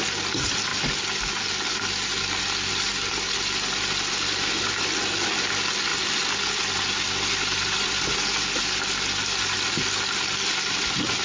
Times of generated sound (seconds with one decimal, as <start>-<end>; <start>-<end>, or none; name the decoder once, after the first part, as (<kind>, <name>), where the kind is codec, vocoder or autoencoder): none